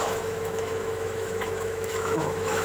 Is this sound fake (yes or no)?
yes